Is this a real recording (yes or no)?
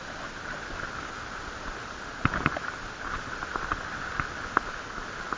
yes